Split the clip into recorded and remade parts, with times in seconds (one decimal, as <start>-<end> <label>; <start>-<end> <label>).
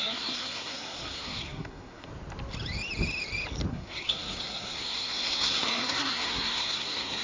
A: 0.0-2.1 remade; 2.1-3.7 recorded; 3.7-7.2 remade